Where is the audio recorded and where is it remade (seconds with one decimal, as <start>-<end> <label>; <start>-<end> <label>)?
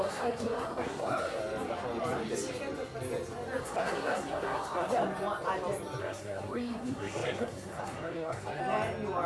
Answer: 0.0-1.4 remade; 1.4-3.6 recorded; 3.6-5.0 remade; 5.0-6.0 recorded; 6.0-8.6 remade; 8.6-9.3 recorded